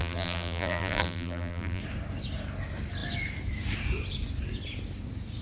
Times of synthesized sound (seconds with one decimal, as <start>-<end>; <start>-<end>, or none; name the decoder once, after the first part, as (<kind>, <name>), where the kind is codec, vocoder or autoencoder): 0.0-1.8 (vocoder, BigVGAN v2)